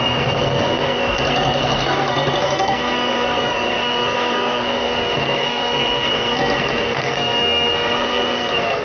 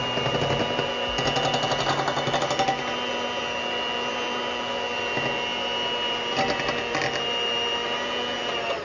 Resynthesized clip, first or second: first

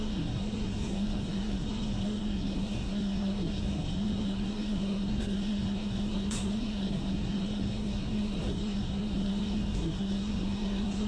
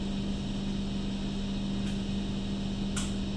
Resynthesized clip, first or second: first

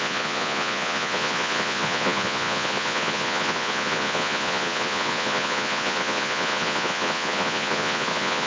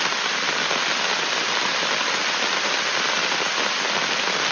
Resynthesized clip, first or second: first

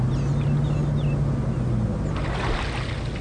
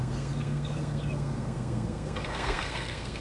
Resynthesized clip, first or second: second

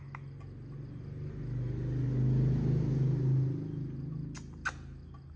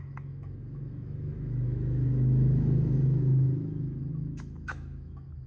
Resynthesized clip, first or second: second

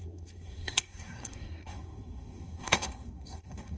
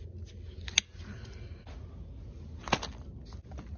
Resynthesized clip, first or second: first